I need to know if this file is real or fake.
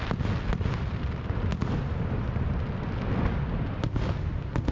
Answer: real